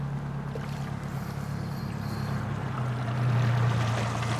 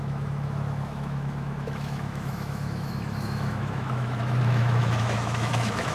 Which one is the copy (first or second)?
second